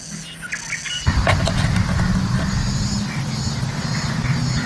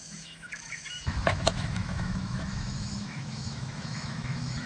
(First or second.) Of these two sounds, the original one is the first